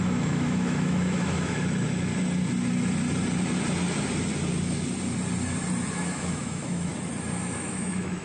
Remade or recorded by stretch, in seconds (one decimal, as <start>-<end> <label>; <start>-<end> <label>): 0.0-2.1 remade; 2.1-5.9 recorded; 5.9-6.9 remade; 6.9-7.4 recorded; 7.4-8.2 remade